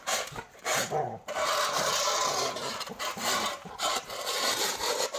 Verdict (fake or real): fake